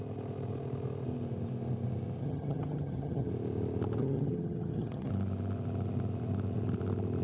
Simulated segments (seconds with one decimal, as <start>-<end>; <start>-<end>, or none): 2.2-3.3; 4.0-5.1